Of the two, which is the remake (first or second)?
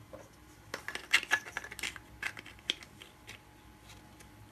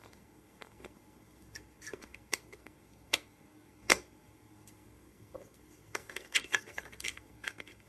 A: second